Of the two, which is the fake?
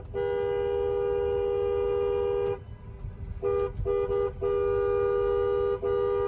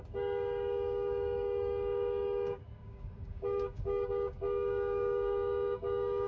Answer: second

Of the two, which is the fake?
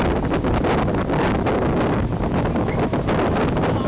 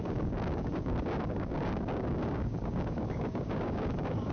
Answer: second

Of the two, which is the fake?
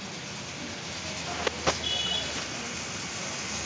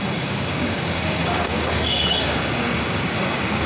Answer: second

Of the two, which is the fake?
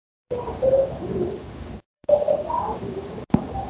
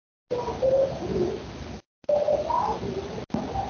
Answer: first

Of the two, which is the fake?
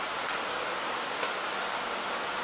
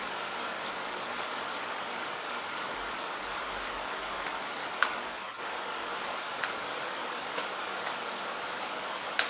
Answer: second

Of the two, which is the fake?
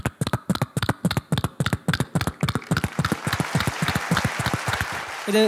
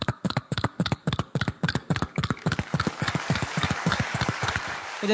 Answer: second